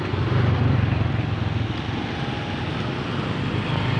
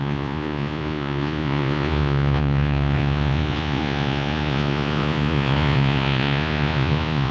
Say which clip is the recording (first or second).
first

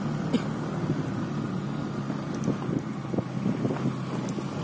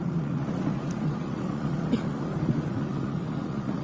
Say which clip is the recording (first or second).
first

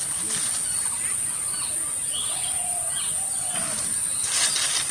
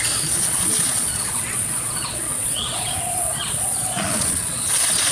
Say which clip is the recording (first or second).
first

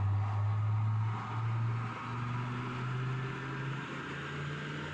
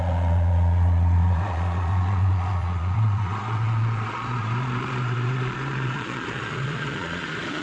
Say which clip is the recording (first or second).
first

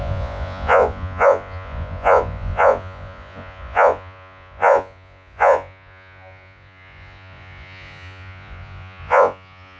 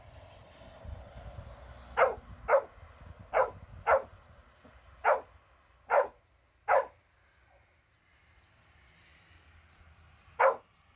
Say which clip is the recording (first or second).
second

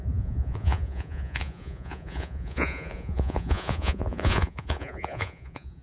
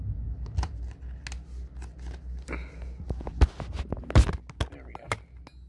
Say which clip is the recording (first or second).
second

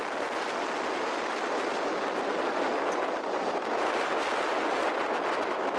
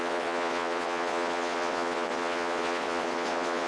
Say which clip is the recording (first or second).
first